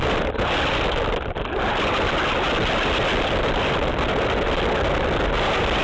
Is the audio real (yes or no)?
yes